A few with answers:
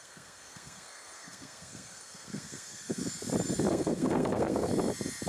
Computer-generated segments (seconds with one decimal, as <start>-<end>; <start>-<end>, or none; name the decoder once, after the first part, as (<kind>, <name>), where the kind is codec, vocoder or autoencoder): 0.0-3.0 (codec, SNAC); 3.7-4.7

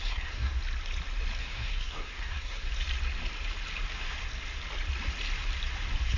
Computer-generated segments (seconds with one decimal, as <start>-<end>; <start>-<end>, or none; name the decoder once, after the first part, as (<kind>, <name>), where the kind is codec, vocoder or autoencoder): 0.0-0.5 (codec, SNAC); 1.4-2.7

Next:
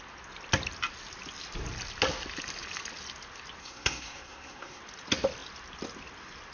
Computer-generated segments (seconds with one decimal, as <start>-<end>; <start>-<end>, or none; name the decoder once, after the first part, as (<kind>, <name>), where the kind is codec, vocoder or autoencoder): 3.6-4.8 (codec, SNAC)

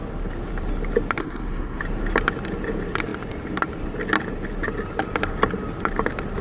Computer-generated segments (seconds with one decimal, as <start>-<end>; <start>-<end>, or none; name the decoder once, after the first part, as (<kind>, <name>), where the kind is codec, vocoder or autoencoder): 1.2-1.8 (codec, SNAC)

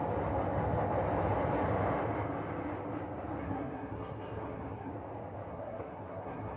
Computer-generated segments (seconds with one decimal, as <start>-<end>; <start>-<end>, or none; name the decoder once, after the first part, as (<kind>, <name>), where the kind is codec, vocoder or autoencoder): 3.4-4.9 (codec, SNAC); 5.5-6.6

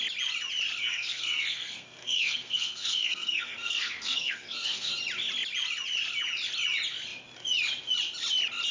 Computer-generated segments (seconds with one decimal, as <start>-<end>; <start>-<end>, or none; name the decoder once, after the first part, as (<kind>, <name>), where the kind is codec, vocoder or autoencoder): 0.8-4.9 (codec, SNAC)

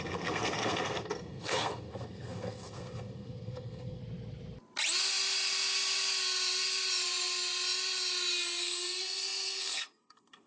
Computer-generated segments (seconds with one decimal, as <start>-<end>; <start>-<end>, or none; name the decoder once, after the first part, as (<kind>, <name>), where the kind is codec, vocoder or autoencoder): 0.0-4.0 (codec, SNAC); 8.6-10.5

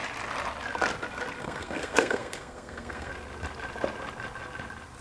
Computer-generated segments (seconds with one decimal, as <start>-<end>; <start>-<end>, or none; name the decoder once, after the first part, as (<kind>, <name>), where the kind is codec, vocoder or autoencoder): 1.4-3.1 (codec, SNAC)